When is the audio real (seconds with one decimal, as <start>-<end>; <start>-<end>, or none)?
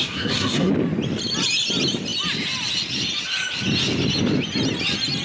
0.7-5.2